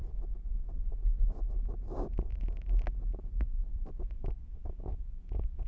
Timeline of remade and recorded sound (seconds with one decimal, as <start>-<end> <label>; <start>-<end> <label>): 0.0-3.4 recorded; 3.4-5.7 remade